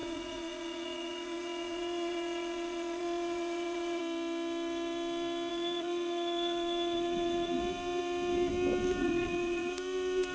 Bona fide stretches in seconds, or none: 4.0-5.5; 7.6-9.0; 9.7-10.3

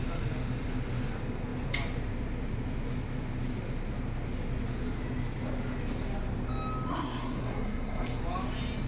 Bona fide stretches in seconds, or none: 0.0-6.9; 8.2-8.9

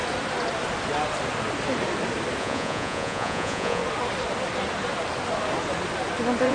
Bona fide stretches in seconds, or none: 0.0-2.4; 3.8-6.5